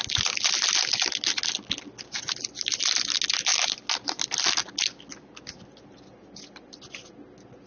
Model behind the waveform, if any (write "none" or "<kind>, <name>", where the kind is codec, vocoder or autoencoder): none